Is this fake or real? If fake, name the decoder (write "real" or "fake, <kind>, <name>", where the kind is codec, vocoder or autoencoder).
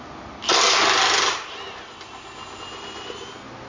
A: real